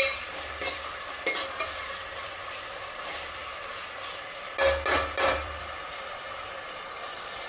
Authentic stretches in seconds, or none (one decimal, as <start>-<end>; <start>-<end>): 3.4-5.2